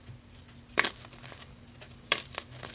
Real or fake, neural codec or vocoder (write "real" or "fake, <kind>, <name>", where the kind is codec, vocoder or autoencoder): fake, vocoder, BigVGAN v2